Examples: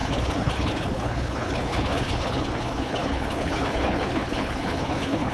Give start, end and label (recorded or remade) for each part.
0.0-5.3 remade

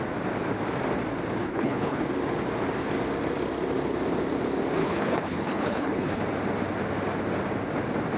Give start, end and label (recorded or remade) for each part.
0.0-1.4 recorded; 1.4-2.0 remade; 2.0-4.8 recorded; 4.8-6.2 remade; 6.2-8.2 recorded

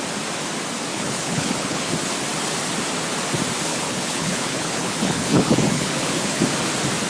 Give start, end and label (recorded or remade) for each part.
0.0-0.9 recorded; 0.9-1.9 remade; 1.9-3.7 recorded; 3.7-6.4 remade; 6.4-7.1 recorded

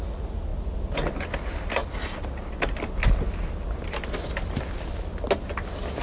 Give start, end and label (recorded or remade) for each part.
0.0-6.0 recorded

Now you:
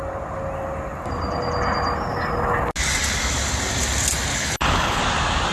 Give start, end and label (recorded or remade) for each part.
0.0-4.3 recorded; 4.3-5.0 remade; 5.0-5.5 recorded

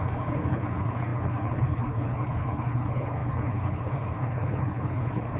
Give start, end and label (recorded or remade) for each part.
0.0-5.4 remade

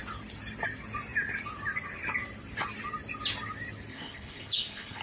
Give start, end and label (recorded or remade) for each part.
0.0-3.9 recorded; 3.9-5.0 remade

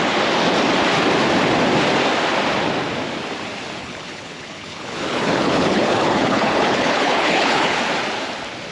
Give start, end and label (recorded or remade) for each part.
0.0-3.8 recorded; 3.8-7.8 remade; 7.8-8.7 recorded